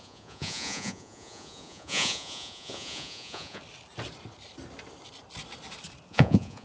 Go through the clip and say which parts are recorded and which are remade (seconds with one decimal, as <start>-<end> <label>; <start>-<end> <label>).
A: 0.0-3.6 remade; 3.6-6.1 recorded; 6.1-6.6 remade